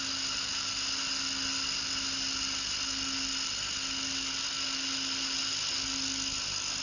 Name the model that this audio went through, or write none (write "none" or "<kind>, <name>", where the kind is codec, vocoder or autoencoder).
none